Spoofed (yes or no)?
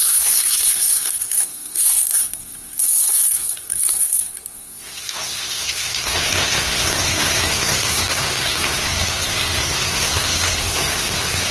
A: yes